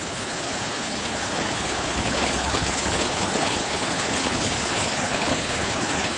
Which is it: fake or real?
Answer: fake